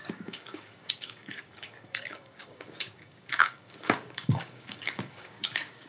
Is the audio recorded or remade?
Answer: remade